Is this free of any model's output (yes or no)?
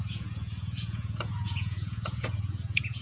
no